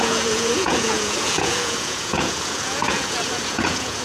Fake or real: fake